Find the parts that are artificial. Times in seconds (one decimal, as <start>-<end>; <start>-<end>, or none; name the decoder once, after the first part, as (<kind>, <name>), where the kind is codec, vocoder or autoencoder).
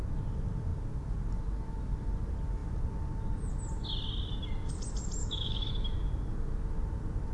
5.2-5.7 (autoencoder, DAC-VAE)